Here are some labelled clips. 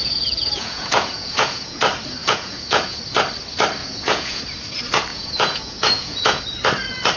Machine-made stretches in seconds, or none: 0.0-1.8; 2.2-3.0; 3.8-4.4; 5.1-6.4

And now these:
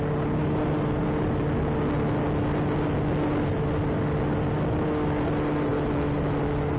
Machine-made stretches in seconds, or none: none

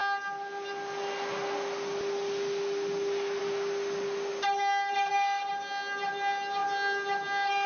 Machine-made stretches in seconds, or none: none

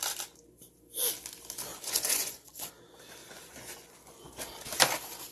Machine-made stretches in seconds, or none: 1.7-2.7; 3.2-4.3

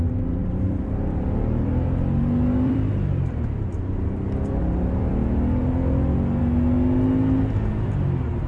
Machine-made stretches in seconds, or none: 0.4-4.6

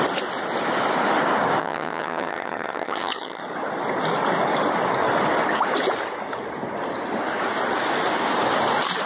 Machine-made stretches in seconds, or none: 1.6-3.4